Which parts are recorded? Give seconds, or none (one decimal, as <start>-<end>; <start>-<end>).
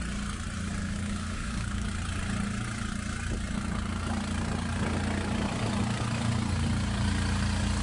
0.0-0.8; 1.9-7.8